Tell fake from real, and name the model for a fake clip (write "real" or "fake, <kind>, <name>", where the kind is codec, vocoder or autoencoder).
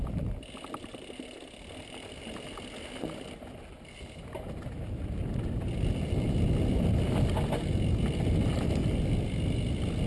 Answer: real